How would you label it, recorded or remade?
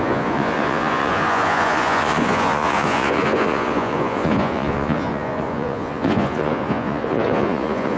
remade